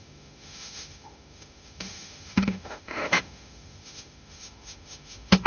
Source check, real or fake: fake